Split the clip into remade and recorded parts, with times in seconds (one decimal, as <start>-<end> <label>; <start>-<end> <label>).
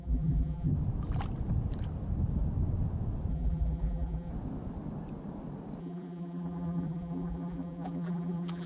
0.0-0.7 remade; 0.7-3.3 recorded; 3.3-4.3 remade; 4.3-5.8 recorded; 5.8-8.7 remade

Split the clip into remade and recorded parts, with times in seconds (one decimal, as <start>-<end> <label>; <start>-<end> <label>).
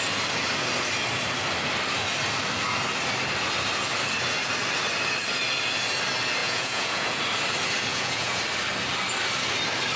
0.0-6.4 recorded; 6.4-7.2 remade; 7.2-7.9 recorded; 7.9-8.4 remade; 8.4-10.0 recorded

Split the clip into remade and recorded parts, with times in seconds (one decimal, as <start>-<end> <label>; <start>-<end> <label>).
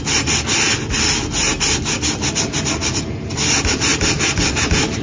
0.0-5.0 recorded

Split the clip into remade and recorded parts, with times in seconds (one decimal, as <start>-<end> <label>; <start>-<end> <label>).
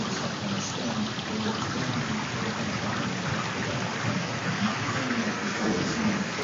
0.0-4.2 recorded; 4.2-6.4 remade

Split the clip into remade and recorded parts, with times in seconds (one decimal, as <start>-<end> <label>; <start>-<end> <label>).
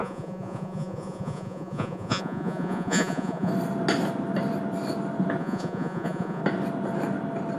0.0-3.5 remade; 3.5-5.4 recorded; 5.4-6.4 remade; 6.4-7.6 recorded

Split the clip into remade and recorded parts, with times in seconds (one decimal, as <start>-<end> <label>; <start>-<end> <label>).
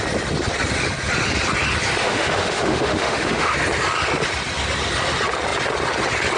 0.0-2.0 recorded; 2.0-3.5 remade; 3.5-6.4 recorded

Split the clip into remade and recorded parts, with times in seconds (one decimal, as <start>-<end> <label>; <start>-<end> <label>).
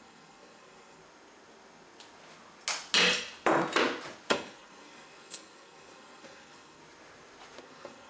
0.0-1.0 remade; 1.0-4.3 recorded; 4.3-6.8 remade; 6.8-7.6 recorded; 7.6-8.1 remade